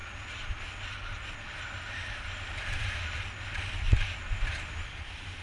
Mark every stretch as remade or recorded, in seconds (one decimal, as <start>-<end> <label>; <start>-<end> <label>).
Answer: 0.0-5.4 recorded